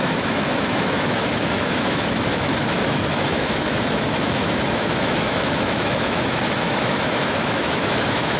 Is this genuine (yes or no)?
no